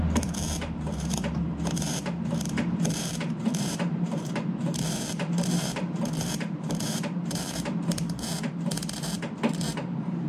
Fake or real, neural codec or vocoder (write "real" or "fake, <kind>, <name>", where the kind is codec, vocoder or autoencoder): fake, vocoder, BigVGAN v2